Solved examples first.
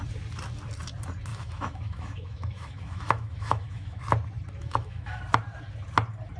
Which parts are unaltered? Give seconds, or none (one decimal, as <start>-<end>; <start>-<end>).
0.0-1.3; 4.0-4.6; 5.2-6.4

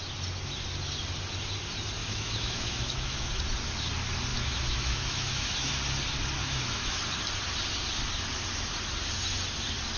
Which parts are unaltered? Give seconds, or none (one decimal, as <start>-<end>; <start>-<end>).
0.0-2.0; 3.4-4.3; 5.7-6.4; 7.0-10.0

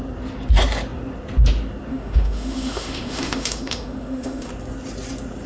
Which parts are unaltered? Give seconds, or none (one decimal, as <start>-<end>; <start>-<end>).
0.0-1.9; 4.5-5.5

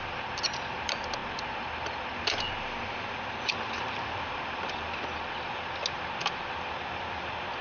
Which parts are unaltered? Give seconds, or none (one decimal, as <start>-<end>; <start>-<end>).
0.0-7.6